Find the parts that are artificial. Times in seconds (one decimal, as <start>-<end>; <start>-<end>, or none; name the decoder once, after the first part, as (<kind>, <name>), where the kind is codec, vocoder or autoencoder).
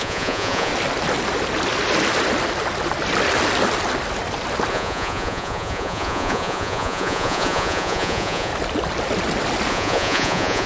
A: 0.0-0.7 (vocoder, Vocos); 4.7-8.5; 9.7-10.7